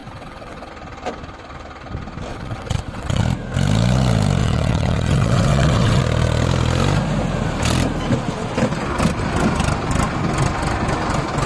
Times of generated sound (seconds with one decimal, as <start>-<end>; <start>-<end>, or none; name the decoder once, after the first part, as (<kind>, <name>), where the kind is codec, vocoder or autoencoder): 0.0-0.7 (vocoder, WaveNeXt); 2.3-3.2; 4.4-6.0